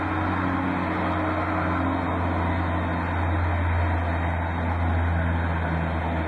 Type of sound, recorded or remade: recorded